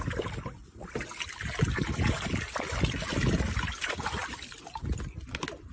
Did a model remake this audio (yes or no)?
no